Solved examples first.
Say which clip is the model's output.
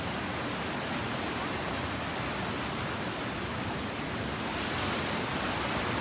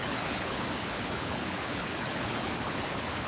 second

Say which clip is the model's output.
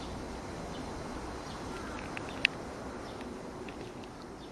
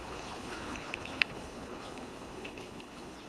second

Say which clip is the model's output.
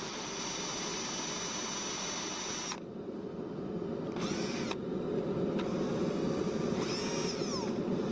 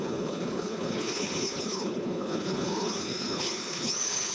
second